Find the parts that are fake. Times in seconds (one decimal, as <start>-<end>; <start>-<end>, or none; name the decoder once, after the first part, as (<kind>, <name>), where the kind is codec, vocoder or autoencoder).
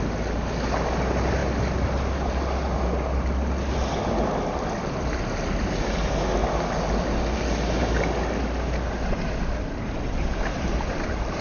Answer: none